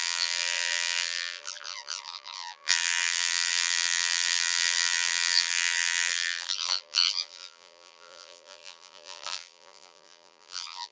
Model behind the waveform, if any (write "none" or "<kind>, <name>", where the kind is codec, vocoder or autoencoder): vocoder, BigVGAN v2